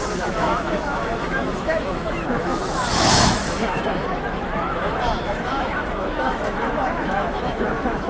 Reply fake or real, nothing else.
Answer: fake